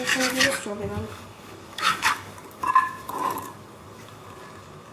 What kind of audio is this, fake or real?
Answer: fake